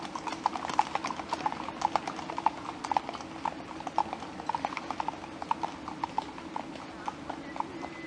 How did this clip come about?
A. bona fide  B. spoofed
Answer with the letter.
A